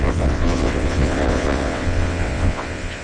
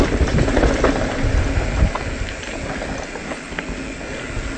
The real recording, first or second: second